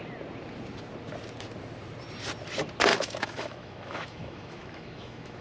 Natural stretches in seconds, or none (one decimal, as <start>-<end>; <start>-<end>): 0.0-2.9